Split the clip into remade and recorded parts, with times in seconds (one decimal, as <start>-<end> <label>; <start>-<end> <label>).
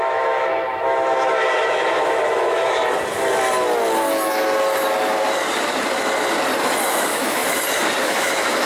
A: 0.0-2.8 remade; 2.8-6.9 recorded; 6.9-7.4 remade; 7.4-8.0 recorded; 8.0-8.7 remade